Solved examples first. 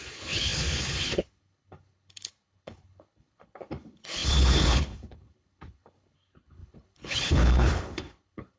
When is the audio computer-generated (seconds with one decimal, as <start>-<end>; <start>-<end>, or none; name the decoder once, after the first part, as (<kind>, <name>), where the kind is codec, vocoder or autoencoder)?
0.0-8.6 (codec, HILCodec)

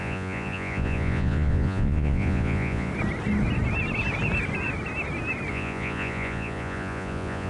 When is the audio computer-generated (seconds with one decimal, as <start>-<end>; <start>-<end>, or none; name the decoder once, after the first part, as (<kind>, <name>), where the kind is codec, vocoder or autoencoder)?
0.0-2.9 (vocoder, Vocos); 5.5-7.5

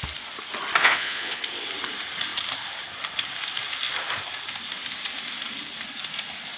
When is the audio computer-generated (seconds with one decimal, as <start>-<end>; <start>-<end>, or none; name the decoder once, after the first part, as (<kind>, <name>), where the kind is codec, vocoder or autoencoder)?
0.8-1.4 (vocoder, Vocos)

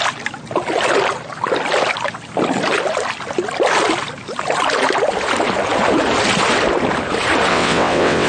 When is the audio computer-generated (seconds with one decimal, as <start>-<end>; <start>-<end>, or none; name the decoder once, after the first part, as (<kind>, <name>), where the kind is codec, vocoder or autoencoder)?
7.5-8.3 (vocoder, WaveNeXt)

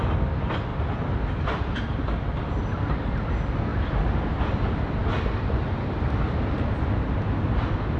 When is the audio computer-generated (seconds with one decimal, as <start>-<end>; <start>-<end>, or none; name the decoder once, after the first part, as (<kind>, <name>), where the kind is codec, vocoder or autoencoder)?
0.7-3.3 (vocoder, BigVGAN v2); 3.7-4.4

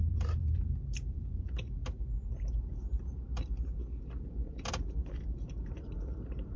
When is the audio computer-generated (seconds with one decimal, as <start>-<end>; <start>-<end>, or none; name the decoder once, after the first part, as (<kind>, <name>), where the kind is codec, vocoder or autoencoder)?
0.0-1.8 (vocoder, BigVGAN v2); 2.6-3.8; 5.0-6.6

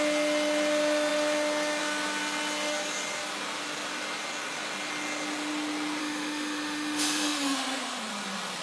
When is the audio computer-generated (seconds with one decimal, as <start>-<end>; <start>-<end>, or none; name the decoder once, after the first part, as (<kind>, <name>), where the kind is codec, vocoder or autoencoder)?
6.0-8.0 (autoencoder, DAC-VAE)

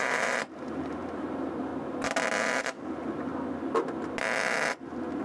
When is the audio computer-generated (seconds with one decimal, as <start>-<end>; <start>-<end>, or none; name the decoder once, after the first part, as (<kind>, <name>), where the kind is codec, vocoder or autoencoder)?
0.0-1.7 (vocoder, BigVGAN v2); 2.6-3.3